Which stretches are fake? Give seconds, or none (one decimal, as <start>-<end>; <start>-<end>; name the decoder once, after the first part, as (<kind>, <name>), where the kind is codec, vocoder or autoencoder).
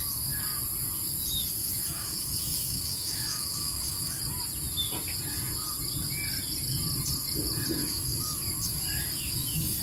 1.6-4.2 (autoencoder, DAC-VAE); 7.8-9.8